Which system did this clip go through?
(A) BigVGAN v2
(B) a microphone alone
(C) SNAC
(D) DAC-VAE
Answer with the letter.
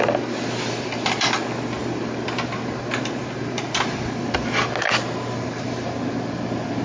B